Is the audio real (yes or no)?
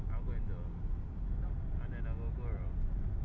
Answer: yes